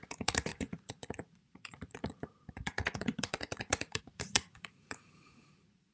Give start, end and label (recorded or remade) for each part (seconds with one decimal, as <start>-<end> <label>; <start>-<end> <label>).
0.0-5.9 remade